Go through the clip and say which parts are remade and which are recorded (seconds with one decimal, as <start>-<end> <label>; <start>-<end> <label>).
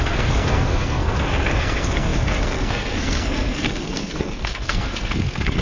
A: 0.0-5.6 remade